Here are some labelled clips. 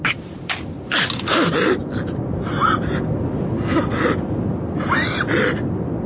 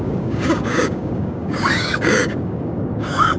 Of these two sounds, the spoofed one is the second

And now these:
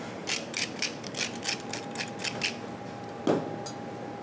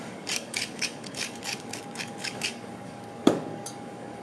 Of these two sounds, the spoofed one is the second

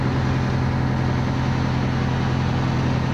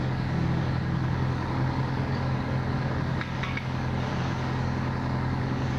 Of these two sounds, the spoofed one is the second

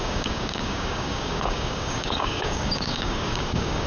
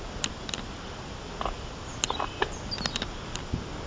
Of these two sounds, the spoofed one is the first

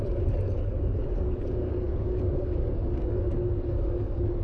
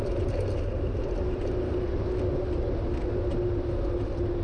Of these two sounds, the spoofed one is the first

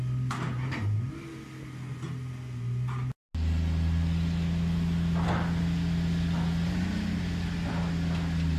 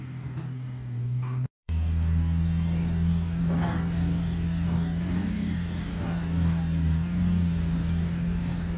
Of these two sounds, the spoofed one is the second